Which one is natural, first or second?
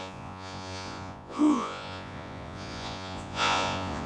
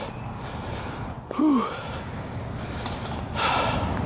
second